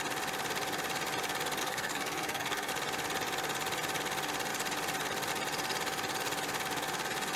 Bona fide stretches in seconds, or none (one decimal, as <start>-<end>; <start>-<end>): 0.0-1.6; 2.7-7.4